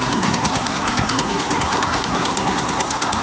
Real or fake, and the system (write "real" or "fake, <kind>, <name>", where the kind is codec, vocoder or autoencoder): fake, codec, SNAC